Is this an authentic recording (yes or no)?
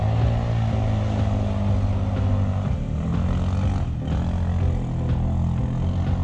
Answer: yes